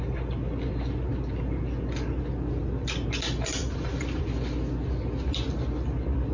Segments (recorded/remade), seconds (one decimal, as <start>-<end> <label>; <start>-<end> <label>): 0.0-3.6 recorded; 3.6-4.2 remade; 4.2-6.3 recorded